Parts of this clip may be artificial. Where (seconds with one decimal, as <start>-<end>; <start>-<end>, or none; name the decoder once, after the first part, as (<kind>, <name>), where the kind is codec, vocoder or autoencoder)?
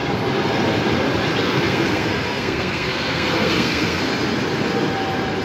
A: 1.4-4.0 (codec, SNAC)